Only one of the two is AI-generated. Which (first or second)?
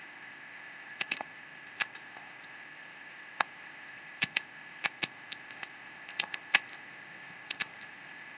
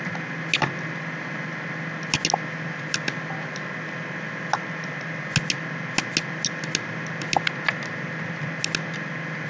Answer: first